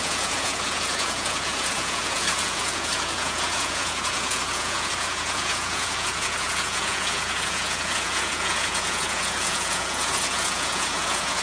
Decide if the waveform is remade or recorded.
remade